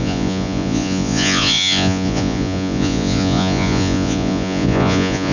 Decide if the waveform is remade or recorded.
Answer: remade